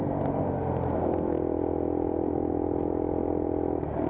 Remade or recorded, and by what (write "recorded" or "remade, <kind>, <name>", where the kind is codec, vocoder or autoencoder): recorded